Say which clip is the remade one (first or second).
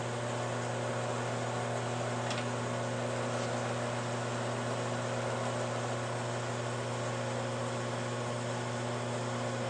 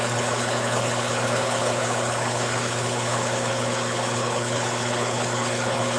second